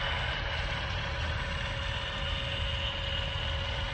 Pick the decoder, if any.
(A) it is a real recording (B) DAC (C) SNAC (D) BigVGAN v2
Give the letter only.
A